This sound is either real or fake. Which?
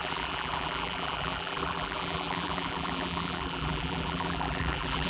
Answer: fake